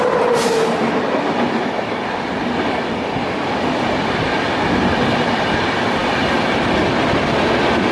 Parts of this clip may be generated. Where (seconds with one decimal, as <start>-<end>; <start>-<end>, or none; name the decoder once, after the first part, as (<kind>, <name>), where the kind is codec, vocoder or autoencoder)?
none